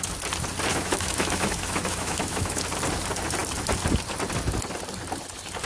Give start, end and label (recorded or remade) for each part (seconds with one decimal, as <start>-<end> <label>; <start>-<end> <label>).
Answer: 0.0-0.7 recorded; 0.7-2.6 remade; 2.6-5.7 recorded